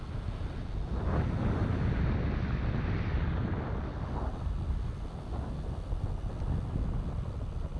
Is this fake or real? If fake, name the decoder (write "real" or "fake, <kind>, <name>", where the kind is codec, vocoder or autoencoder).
real